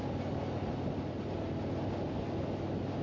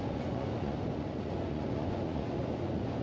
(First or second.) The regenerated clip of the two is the second